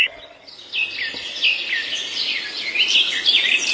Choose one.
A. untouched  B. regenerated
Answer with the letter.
A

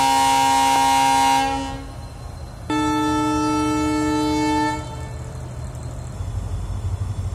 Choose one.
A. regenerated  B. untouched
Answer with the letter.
B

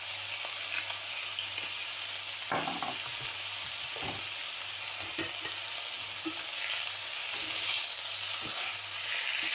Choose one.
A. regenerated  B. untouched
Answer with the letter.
B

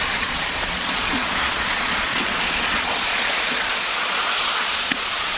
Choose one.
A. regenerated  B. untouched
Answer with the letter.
A